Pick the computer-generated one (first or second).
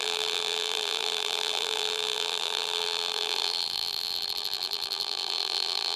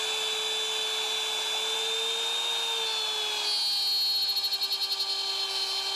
first